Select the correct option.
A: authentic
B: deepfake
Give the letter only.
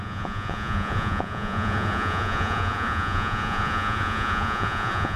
B